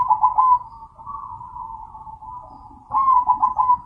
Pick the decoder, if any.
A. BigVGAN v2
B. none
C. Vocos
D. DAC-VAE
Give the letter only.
B